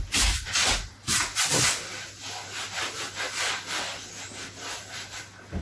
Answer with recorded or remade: recorded